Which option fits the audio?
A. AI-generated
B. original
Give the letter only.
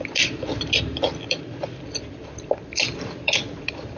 A